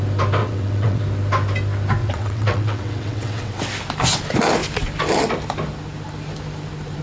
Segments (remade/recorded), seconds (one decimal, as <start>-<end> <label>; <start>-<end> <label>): 0.0-0.4 recorded; 0.4-1.0 remade; 1.0-2.0 recorded; 2.0-3.6 remade; 3.6-7.0 recorded